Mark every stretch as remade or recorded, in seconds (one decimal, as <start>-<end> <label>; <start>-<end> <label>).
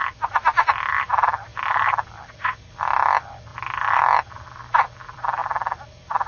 0.0-1.5 remade; 1.5-2.1 recorded; 2.1-3.5 remade; 3.5-4.6 recorded; 4.6-6.3 remade